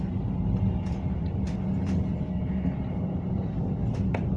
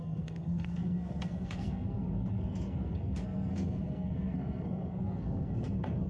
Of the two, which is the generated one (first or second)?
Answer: second